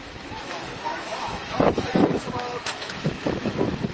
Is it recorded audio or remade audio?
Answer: remade